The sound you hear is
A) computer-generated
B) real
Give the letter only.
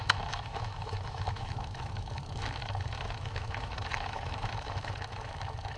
A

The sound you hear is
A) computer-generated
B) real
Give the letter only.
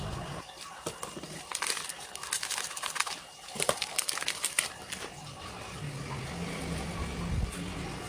B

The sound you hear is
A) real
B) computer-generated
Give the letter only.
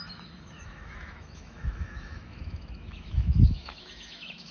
B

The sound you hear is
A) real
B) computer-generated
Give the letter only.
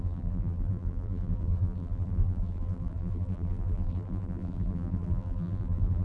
B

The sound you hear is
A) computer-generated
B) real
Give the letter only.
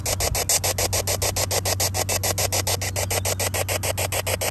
B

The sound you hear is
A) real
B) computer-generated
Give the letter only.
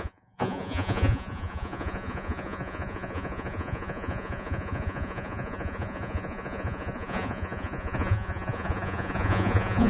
B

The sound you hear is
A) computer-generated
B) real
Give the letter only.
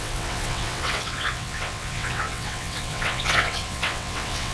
A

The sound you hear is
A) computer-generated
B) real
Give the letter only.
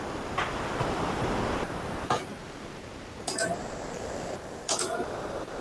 A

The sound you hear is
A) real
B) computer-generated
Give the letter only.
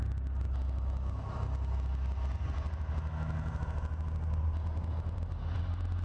A